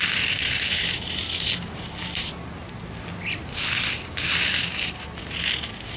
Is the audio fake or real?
real